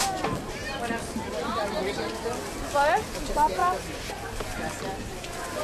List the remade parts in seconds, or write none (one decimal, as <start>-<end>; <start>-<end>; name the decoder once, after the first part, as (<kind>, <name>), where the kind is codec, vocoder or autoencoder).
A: none

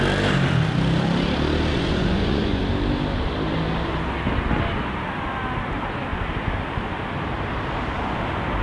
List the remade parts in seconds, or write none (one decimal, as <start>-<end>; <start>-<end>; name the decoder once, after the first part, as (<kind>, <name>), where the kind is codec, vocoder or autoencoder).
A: 1.7-2.6 (vocoder, Vocos)

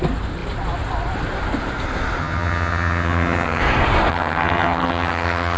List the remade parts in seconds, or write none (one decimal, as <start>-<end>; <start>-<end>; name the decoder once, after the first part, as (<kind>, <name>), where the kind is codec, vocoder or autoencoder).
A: 2.2-3.6 (vocoder, HiFi-GAN); 4.1-5.6

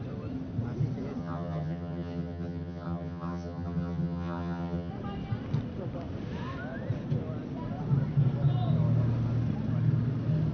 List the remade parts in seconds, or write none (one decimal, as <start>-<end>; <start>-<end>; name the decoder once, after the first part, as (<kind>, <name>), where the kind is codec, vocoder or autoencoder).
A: 1.2-4.9 (vocoder, HiFi-GAN)

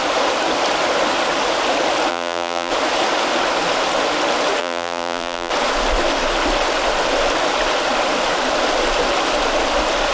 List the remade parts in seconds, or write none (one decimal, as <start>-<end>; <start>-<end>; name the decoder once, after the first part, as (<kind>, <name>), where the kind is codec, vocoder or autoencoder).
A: 2.1-2.7 (vocoder, BigVGAN v2); 4.6-5.5